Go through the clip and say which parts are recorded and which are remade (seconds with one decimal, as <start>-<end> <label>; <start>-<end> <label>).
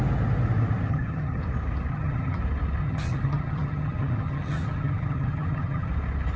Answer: 0.0-0.9 recorded; 0.9-1.4 remade; 1.4-1.9 recorded; 1.9-2.4 remade; 2.4-2.8 recorded; 2.8-5.9 remade; 5.9-6.4 recorded